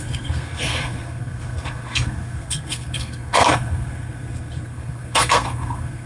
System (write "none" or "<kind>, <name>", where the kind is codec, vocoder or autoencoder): codec, SNAC